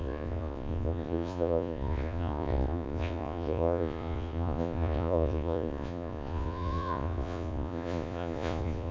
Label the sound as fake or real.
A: fake